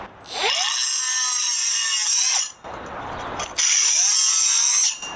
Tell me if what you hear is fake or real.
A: real